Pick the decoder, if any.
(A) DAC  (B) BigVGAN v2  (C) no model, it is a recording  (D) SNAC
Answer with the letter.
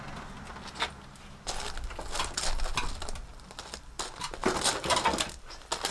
C